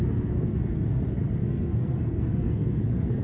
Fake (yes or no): yes